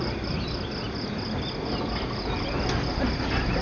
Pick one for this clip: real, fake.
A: real